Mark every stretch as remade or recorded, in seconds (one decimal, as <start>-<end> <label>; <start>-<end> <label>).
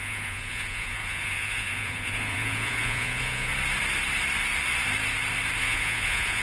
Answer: 0.0-3.5 remade; 3.5-5.6 recorded; 5.6-6.4 remade